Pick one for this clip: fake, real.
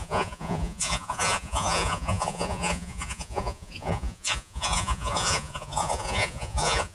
fake